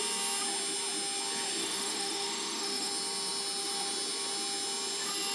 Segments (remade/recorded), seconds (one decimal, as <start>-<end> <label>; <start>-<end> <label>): 0.0-1.6 recorded; 1.6-2.9 remade; 2.9-5.3 recorded